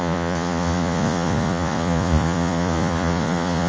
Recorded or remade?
remade